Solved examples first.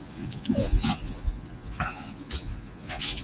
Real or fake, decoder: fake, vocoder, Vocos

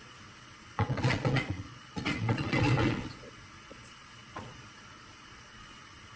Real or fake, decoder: fake, vocoder, Vocos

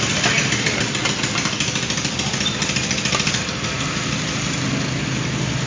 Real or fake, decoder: real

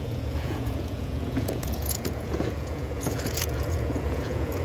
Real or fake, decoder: fake, vocoder, Vocos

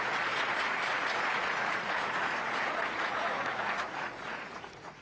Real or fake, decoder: fake, vocoder, Vocos